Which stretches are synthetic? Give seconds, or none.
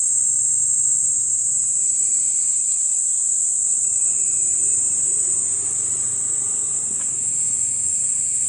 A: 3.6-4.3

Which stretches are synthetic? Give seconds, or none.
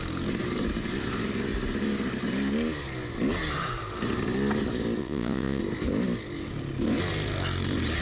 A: 5.0-5.6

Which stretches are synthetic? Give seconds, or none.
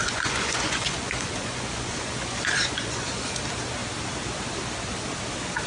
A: 0.0-3.4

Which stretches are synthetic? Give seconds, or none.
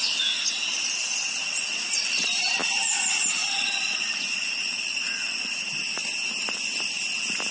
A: 3.4-5.5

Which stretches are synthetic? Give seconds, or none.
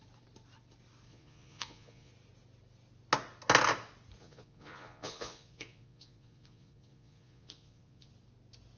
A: 1.1-2.1; 4.2-8.1